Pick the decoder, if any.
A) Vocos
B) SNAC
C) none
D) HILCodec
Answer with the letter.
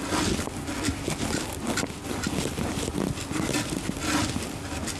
C